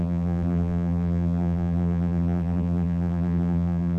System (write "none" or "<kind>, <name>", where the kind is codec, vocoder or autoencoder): vocoder, BigVGAN v2